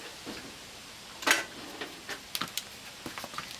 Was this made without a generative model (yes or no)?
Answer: yes